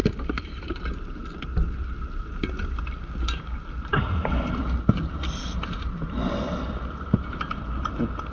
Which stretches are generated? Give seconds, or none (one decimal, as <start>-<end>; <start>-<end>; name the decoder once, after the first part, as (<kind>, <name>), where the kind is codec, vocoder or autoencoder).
0.0-0.8 (vocoder, BigVGAN v2); 3.9-5.9